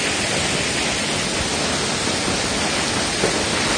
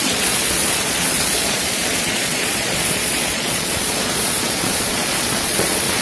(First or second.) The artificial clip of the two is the second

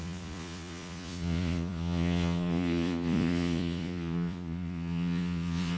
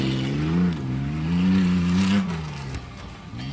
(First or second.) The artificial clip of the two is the first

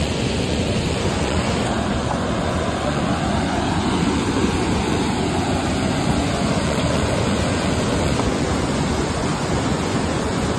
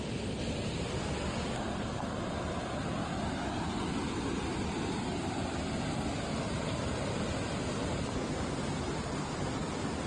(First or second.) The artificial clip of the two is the first